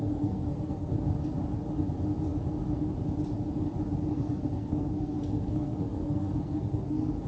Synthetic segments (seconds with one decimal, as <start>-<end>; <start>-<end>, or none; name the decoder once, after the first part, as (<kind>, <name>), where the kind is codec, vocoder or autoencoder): 0.0-0.9 (codec, SNAC); 4.1-7.3